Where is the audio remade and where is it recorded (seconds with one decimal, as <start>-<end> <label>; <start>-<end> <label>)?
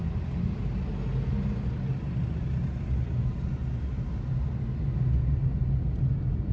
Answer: 0.0-6.5 recorded